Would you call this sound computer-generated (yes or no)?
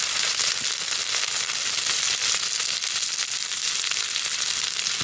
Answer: no